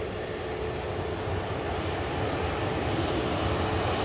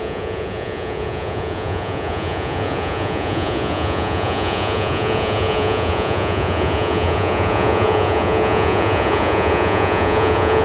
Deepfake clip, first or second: second